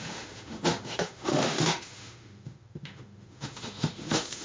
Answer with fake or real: fake